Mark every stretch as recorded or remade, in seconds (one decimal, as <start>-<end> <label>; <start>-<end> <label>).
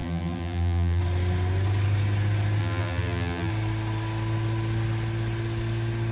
0.0-1.0 remade; 1.0-2.6 recorded; 2.6-3.5 remade; 3.5-6.1 recorded